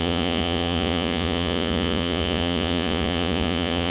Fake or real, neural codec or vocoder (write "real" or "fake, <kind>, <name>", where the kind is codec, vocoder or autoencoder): fake, vocoder, Vocos